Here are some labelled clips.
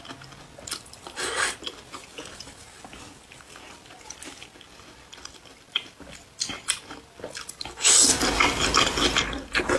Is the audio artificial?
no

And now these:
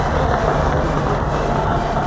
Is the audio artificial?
no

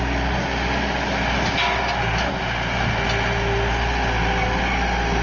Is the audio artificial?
no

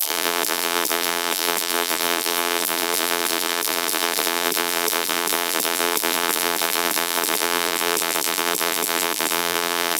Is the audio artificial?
yes